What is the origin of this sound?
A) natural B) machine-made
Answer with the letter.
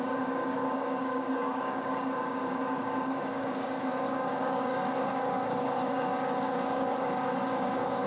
B